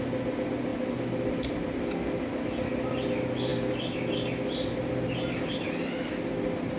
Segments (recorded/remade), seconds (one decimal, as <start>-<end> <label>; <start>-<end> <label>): 0.0-6.8 recorded